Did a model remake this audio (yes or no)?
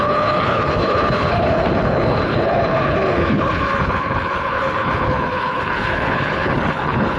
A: yes